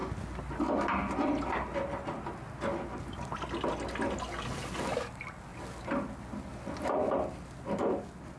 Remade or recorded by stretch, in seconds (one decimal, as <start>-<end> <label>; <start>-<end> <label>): 0.0-8.4 recorded